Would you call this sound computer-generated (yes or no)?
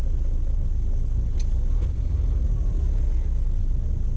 no